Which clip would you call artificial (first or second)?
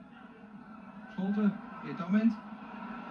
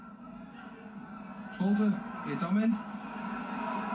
first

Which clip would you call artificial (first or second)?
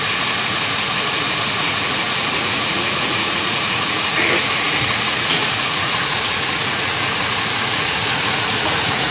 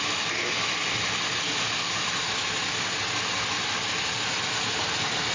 first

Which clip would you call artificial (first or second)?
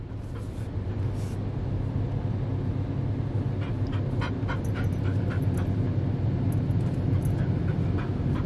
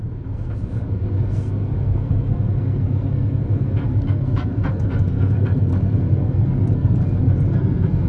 second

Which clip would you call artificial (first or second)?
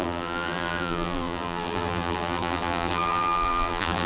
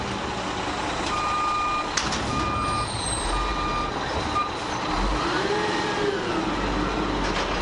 first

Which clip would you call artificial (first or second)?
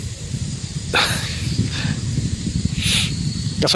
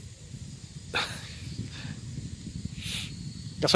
first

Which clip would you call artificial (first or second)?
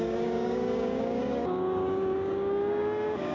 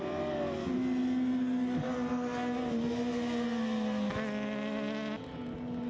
first